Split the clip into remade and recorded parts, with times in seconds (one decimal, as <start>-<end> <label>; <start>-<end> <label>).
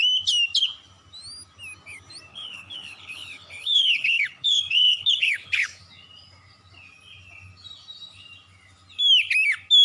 0.0-2.3 recorded; 2.3-5.8 remade; 5.8-9.8 recorded